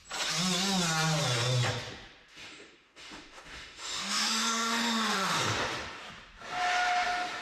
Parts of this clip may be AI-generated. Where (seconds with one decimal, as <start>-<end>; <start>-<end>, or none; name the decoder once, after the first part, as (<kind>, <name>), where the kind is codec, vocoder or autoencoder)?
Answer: 2.3-5.4 (autoencoder, DAC-VAE)